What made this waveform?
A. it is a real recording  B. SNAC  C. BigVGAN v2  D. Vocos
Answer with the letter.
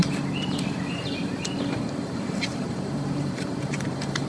C